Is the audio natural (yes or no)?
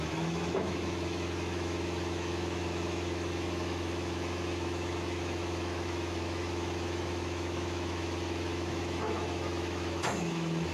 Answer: no